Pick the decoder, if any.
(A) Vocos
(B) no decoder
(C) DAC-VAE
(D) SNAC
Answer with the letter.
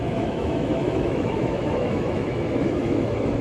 C